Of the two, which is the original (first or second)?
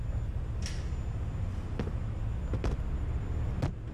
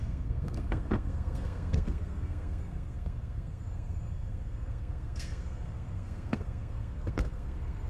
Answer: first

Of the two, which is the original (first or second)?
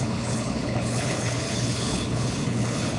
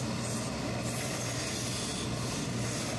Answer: second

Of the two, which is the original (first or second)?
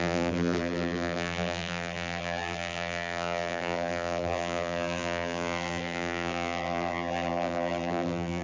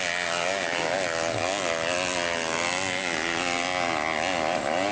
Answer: second